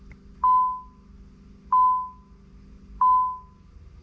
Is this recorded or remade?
recorded